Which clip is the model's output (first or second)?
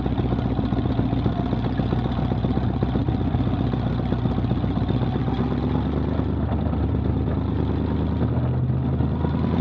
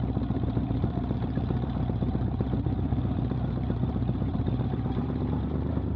second